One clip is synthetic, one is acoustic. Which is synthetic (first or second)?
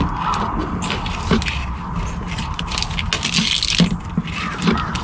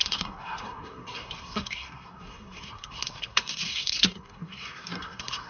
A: second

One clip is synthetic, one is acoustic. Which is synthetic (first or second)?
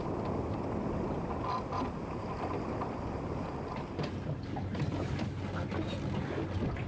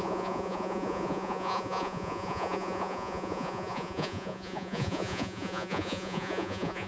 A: second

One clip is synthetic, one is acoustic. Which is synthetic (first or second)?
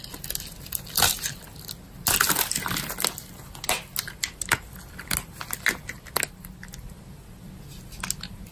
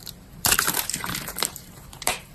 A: second